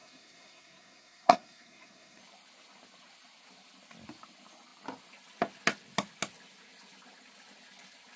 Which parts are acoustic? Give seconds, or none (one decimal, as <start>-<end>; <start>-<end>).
2.2-8.2